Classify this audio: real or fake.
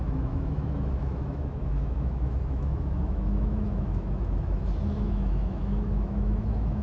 fake